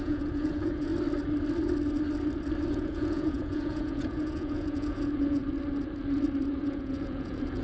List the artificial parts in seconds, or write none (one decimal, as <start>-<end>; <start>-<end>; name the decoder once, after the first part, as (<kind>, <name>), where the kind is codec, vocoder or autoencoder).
0.0-0.9 (vocoder, Vocos); 2.7-5.4; 6.5-7.6